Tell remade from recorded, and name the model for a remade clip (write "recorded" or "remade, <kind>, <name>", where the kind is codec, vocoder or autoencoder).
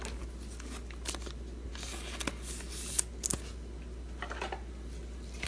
recorded